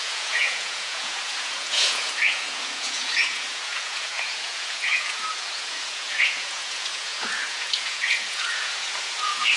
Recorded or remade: remade